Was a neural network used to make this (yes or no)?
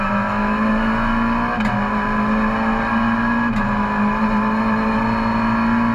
no